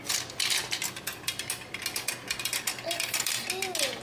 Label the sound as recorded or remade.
recorded